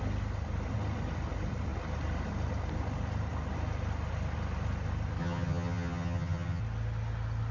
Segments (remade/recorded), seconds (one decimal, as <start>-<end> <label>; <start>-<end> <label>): 0.0-5.2 recorded; 5.2-6.6 remade; 6.6-7.5 recorded